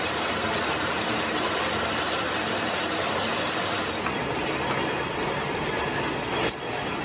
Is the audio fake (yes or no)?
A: no